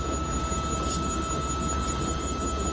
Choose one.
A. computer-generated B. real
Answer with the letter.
B